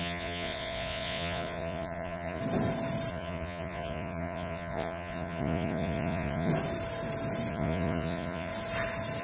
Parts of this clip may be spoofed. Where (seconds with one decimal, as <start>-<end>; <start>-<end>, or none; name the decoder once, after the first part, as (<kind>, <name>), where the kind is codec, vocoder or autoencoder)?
0.0-2.4 (vocoder, Vocos); 3.1-6.5; 7.5-8.5